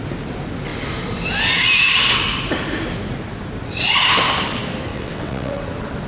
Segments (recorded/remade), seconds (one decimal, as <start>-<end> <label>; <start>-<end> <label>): 0.0-4.9 recorded; 4.9-5.6 remade; 5.6-6.1 recorded